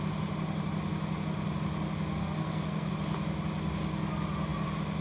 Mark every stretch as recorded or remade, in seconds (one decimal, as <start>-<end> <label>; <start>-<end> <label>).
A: 0.0-2.2 recorded; 2.2-2.9 remade; 2.9-5.0 recorded